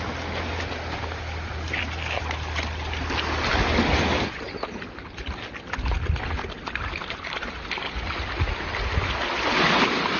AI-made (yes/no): no